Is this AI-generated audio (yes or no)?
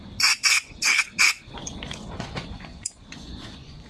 yes